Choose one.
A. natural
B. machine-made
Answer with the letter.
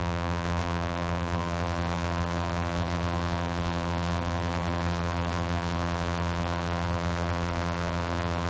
B